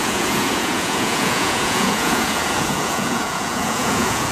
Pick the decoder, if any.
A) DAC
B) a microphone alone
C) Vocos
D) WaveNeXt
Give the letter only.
C